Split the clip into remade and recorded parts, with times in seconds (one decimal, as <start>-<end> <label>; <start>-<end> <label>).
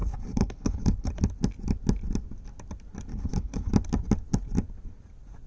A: 0.0-1.1 remade; 1.1-3.1 recorded; 3.1-3.7 remade; 3.7-5.5 recorded